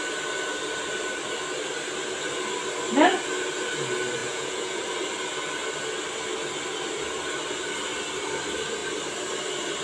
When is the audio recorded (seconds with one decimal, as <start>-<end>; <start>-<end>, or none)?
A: 0.0-4.2; 4.8-9.8